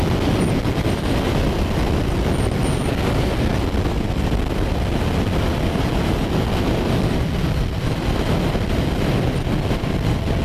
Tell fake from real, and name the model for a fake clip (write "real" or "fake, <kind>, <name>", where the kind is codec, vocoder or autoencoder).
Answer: real